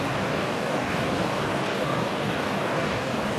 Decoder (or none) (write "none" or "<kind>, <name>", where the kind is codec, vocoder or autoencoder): codec, DAC